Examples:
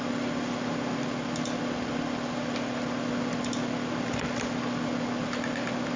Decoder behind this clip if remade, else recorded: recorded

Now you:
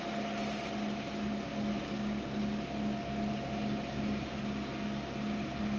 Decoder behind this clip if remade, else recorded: recorded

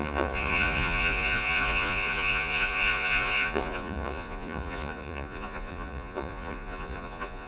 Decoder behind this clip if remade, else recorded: remade, vocoder, Vocos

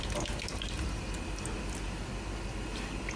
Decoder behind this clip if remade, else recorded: recorded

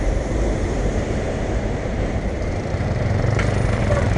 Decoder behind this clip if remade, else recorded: remade, vocoder, BigVGAN v2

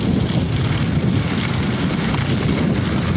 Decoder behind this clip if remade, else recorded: recorded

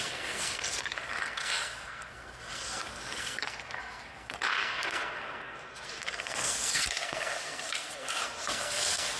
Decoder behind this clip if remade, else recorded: remade, codec, SNAC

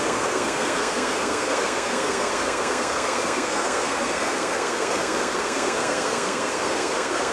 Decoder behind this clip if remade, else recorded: remade, codec, SNAC